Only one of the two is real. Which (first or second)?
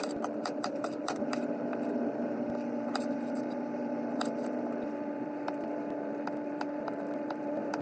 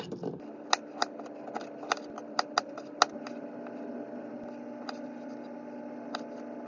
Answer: second